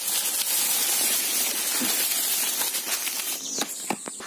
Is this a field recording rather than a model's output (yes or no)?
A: yes